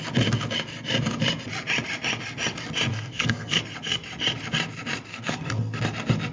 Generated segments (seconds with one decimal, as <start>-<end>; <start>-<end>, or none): 2.9-3.6; 5.1-5.8